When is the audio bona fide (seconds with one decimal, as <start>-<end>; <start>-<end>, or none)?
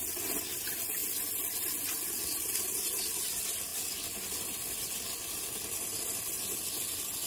0.0-3.7; 5.4-7.3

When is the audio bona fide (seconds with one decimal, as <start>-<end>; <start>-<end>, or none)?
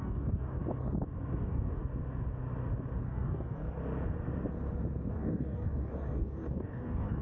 0.6-1.4; 1.8-3.0; 3.8-5.1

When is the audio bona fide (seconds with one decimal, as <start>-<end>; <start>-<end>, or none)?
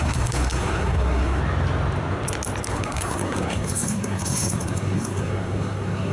1.4-2.7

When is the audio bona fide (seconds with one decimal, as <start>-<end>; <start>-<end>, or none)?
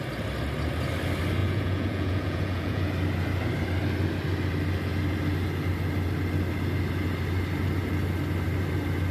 0.0-1.4; 2.9-9.1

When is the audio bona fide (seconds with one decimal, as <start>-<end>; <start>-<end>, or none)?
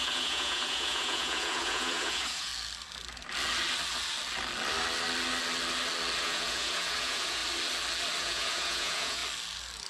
2.5-6.2; 7.4-8.2; 9.2-9.9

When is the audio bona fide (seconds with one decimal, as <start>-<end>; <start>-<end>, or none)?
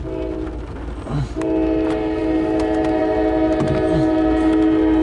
0.0-5.0